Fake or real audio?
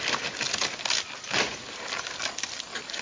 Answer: real